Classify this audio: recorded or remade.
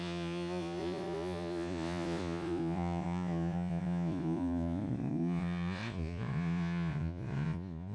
remade